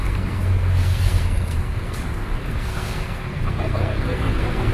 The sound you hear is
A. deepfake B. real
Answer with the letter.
A